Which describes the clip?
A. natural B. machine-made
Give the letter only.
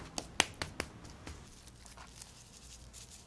A